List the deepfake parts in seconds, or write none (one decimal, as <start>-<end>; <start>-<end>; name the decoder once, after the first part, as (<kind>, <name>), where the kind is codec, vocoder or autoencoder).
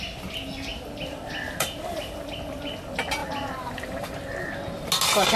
0.7-2.8 (vocoder, BigVGAN v2); 3.2-4.5